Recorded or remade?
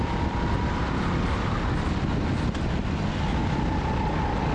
recorded